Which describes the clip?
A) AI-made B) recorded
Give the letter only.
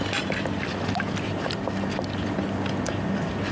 B